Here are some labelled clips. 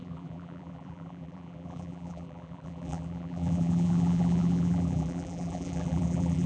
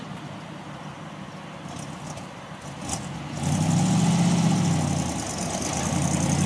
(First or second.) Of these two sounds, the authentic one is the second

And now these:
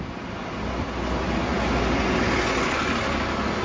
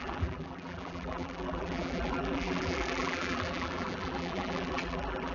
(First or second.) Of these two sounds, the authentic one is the first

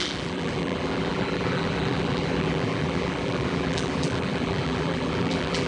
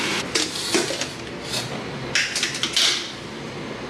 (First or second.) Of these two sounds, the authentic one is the second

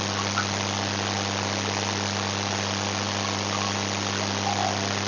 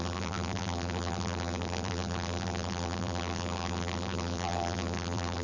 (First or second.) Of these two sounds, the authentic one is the first